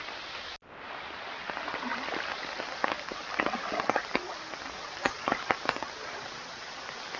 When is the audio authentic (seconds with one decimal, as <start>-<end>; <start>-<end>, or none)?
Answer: 0.0-7.2